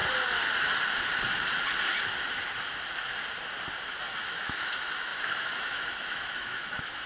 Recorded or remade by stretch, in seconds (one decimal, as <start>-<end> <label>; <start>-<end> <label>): 0.0-4.0 recorded; 4.0-7.1 remade